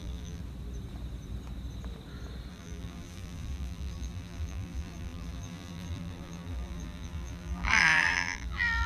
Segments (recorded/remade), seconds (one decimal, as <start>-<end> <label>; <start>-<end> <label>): 0.0-0.4 remade; 0.4-2.5 recorded; 2.5-8.9 remade

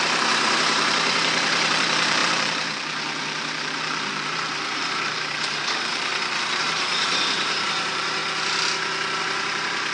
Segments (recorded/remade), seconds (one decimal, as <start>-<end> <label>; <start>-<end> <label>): 0.0-8.2 remade; 8.2-9.2 recorded; 9.2-9.9 remade

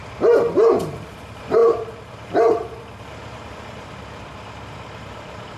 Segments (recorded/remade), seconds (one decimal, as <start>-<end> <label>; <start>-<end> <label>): 0.0-0.8 recorded; 0.8-1.6 remade; 1.6-3.0 recorded; 3.0-5.6 remade

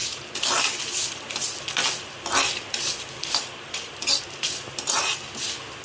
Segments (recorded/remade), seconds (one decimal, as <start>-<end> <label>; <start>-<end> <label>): 0.0-1.8 recorded; 1.8-5.3 remade; 5.3-5.8 recorded

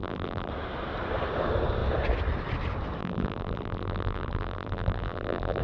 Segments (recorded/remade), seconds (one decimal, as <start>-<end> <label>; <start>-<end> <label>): 0.0-0.5 remade; 0.5-3.0 recorded; 3.0-5.6 remade